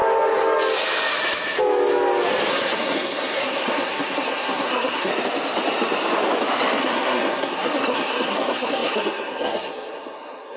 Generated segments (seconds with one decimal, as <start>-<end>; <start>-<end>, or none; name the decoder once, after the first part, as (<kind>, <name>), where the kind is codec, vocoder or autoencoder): 2.5-5.1 (codec, SNAC); 6.8-10.6